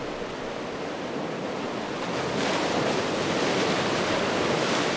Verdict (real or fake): real